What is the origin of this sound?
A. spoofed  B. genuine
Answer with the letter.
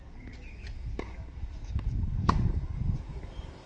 A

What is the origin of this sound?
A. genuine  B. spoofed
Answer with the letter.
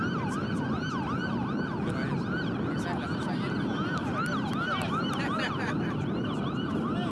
A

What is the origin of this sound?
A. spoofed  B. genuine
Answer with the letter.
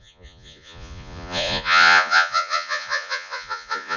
A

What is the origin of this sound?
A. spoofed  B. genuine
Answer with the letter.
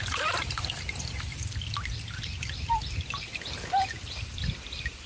B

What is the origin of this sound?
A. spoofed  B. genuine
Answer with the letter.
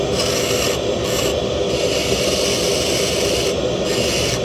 B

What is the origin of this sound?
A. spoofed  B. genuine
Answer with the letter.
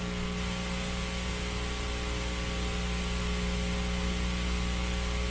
B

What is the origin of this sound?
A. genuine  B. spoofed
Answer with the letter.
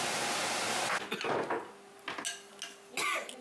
A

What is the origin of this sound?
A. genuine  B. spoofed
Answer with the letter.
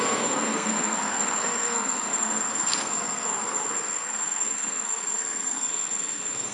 B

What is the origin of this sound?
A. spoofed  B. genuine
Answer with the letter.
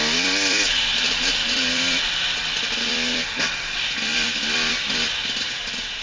A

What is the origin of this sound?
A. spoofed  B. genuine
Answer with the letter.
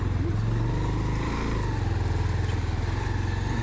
B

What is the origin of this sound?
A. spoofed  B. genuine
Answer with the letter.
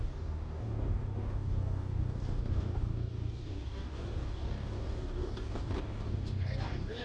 A